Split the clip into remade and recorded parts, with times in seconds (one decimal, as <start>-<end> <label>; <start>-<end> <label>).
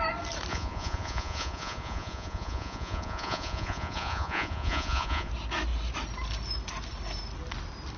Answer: 0.0-0.5 recorded; 0.5-5.3 remade; 5.3-8.0 recorded